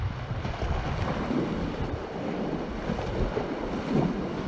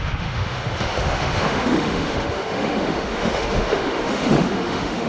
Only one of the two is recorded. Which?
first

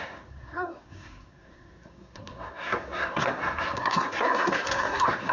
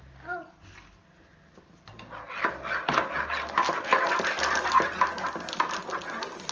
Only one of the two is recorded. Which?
second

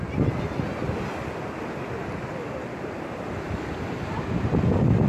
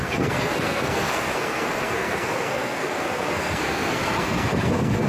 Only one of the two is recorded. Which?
first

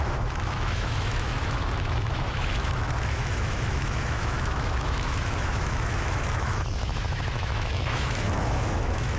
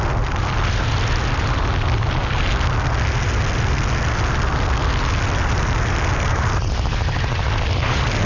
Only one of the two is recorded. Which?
second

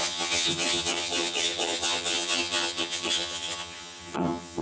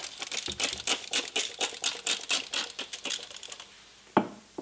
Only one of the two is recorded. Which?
second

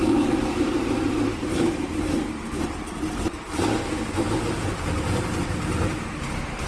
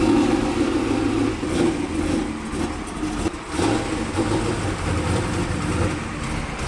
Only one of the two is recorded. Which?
second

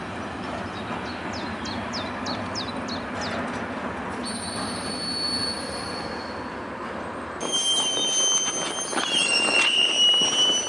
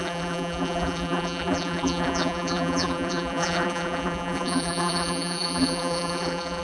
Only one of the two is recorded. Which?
first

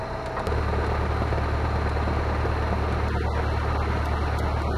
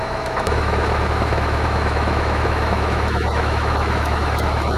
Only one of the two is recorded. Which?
first